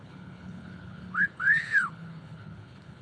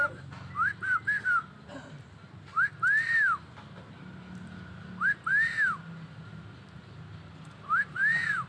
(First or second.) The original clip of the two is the second